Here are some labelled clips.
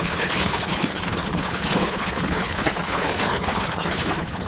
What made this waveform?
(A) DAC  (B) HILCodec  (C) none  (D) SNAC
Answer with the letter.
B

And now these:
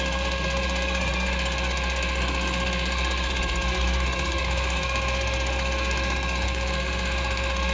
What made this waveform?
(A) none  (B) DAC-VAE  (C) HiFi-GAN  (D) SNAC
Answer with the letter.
D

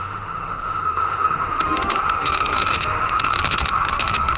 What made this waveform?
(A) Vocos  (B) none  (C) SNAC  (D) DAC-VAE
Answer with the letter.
D